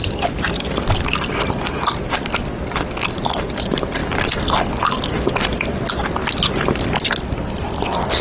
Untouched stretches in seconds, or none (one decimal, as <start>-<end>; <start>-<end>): 0.6-8.2